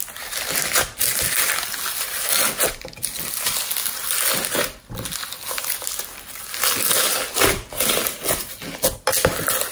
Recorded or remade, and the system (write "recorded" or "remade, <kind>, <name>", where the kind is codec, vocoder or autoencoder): recorded